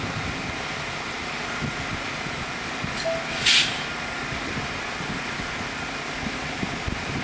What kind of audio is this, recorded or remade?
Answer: recorded